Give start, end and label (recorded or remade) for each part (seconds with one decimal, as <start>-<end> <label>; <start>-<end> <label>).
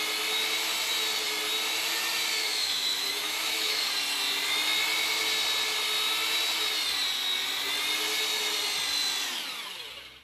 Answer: 0.0-2.4 recorded; 2.4-3.9 remade; 3.9-10.2 recorded